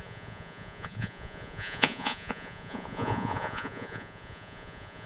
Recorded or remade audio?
remade